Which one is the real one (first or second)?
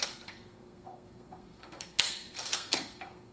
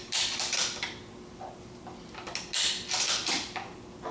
second